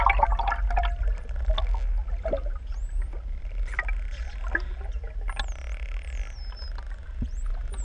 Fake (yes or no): no